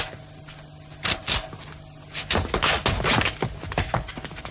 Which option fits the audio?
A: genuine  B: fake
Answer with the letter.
A